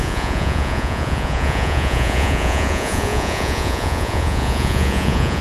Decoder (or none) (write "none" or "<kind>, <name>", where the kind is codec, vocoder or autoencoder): vocoder, Vocos